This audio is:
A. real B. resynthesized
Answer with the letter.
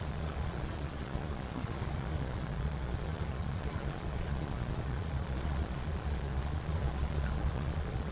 B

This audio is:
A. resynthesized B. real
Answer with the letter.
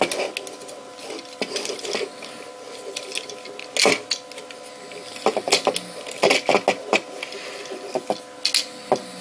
B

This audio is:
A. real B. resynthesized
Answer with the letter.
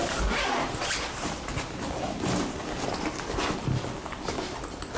A